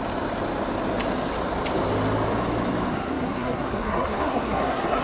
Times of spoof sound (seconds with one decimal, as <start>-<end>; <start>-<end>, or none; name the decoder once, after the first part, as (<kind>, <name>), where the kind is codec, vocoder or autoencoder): 2.9-5.0 (codec, SNAC)